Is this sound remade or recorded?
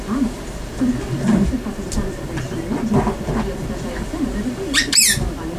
recorded